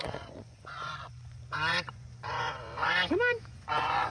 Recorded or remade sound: remade